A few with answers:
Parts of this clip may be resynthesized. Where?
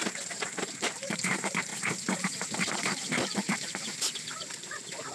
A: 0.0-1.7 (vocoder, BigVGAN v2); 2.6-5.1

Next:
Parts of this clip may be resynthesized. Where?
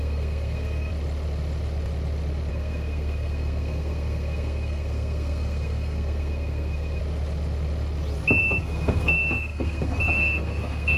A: 0.0-0.9 (codec, SNAC); 2.5-7.0; 8.4-11.0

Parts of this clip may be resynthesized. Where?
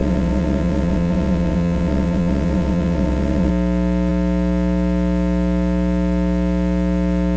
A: 0.0-3.5 (vocoder, WaveNeXt)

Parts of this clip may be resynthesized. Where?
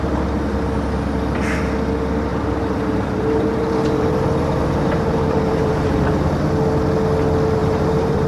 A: 2.3-6.1 (vocoder, BigVGAN v2); 7.6-8.3